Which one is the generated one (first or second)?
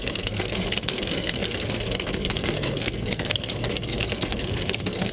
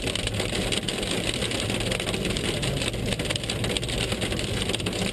first